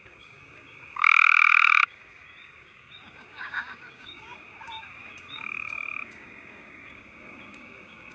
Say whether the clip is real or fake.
fake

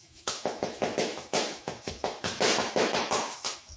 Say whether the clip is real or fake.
fake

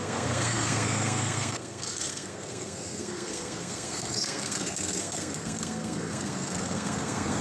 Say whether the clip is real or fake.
fake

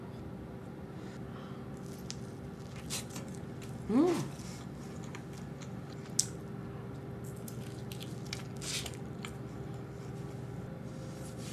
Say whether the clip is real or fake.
real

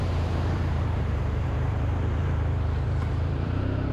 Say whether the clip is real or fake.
fake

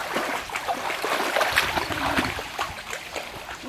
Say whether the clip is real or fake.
real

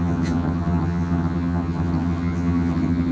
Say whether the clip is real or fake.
fake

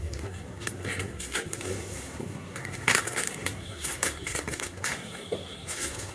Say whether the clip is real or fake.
fake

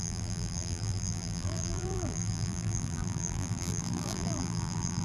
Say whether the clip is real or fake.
fake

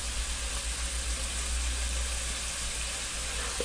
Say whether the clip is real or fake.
real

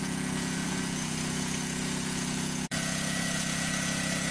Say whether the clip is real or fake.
fake